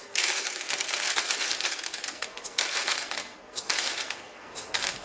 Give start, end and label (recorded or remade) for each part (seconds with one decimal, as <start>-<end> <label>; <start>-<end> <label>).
0.0-5.0 remade